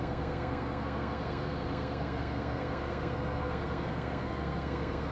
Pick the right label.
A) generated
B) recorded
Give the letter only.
A